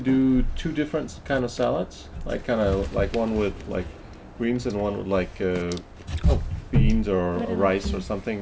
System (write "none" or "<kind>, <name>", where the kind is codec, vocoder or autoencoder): none